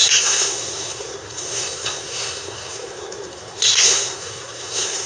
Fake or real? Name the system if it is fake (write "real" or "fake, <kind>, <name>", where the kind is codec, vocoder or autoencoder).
fake, codec, SNAC